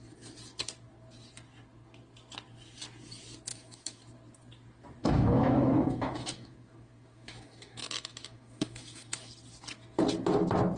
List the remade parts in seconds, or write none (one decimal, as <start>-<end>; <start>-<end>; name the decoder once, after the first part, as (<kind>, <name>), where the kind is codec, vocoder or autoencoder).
3.5-4.0 (autoencoder, DAC-VAE); 5.0-9.3